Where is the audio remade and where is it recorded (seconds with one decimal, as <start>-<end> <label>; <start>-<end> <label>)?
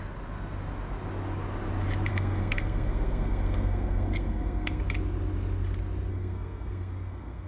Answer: 0.0-2.1 recorded; 2.1-4.8 remade; 4.8-6.1 recorded; 6.1-7.5 remade